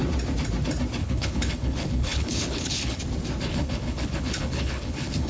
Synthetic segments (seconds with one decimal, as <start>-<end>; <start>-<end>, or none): 1.0-3.0; 3.5-5.3